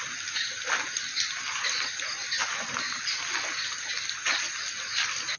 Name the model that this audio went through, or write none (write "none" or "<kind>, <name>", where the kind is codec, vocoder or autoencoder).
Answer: none